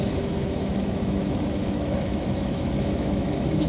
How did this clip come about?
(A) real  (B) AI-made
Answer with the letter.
B